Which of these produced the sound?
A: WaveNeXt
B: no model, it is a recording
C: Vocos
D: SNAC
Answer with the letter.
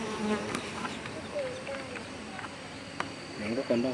B